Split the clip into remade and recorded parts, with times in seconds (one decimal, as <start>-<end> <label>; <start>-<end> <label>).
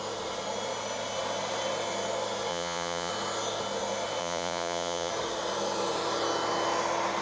0.0-2.5 recorded; 2.5-3.1 remade; 3.1-4.2 recorded; 4.2-5.1 remade; 5.1-7.2 recorded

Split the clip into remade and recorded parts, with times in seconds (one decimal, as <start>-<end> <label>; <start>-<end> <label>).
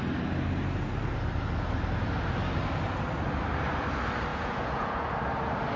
0.0-4.3 recorded; 4.3-5.1 remade; 5.1-5.8 recorded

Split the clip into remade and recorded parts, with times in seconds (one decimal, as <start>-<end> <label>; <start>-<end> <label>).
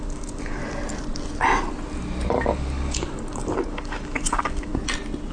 0.0-0.6 remade; 0.6-2.3 recorded; 2.3-4.7 remade; 4.7-5.3 recorded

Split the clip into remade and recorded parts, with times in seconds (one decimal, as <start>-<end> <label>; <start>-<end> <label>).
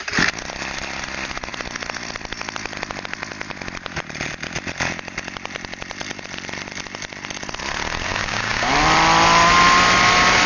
0.0-8.2 recorded; 8.2-8.7 remade; 8.7-10.5 recorded